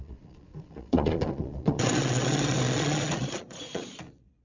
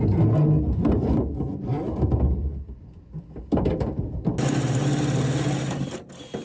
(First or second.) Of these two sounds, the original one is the second